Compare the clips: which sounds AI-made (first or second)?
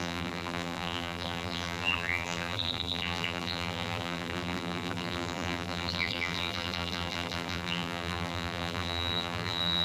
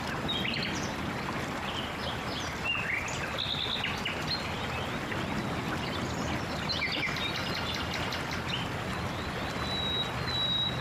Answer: first